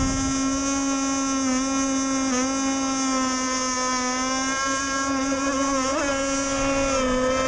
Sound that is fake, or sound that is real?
real